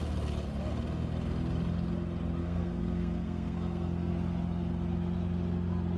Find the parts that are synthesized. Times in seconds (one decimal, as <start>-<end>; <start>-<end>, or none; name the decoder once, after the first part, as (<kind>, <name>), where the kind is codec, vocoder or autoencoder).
2.4-4.1 (codec, SNAC)